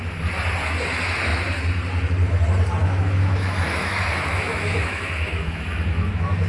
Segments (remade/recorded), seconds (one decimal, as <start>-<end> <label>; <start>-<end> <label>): 0.0-2.8 recorded; 2.8-6.5 remade